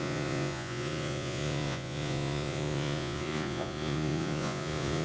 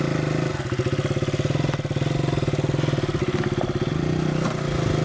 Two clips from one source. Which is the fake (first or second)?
first